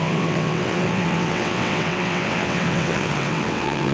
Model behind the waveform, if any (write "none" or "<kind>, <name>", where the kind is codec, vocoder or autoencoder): vocoder, WaveNeXt